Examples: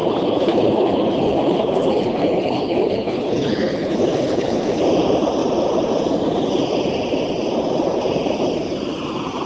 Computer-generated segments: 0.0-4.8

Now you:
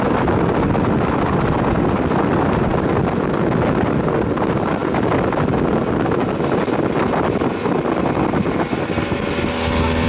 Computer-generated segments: none

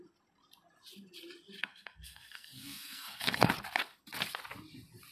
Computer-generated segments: 1.6-3.5

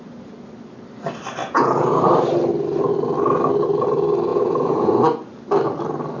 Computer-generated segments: 1.4-2.0; 4.3-4.9

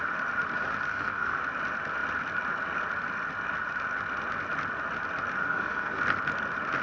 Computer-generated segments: 0.9-1.4; 5.4-6.0

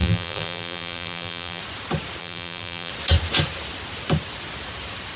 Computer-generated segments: 0.0-1.6; 2.2-2.9